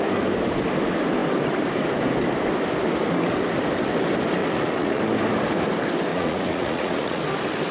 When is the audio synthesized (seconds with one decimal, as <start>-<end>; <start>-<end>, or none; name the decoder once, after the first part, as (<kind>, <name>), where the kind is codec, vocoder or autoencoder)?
4.4-5.0 (vocoder, Vocos); 6.1-7.2